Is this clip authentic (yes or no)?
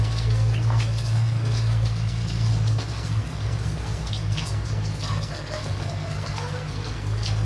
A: no